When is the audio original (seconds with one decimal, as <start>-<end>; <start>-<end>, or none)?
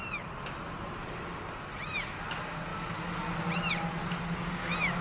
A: 0.0-5.0